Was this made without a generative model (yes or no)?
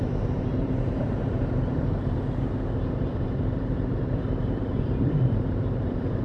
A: no